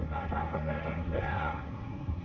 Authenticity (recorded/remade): remade